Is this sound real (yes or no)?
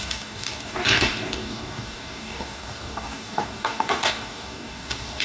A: no